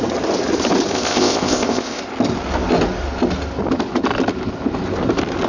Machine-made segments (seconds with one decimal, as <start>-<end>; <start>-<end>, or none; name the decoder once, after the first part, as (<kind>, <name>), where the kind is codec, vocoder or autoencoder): 0.9-2.0 (codec, ZipCodec)